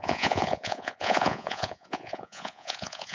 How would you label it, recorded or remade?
remade